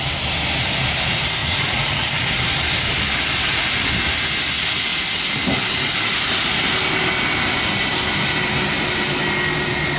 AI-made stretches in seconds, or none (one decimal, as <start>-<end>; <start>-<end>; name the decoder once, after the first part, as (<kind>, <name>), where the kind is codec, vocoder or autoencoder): 1.4-2.2 (vocoder, Vocos)